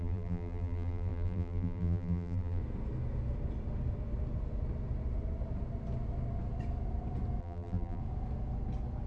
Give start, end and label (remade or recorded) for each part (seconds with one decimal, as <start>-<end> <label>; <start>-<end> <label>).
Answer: 0.0-2.6 remade; 2.6-7.4 recorded; 7.4-8.0 remade; 8.0-9.1 recorded